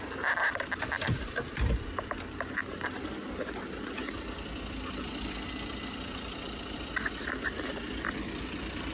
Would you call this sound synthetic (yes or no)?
yes